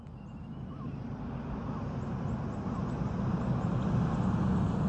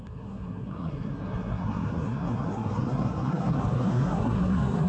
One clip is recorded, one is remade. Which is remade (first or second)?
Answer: second